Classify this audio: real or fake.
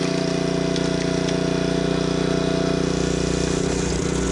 real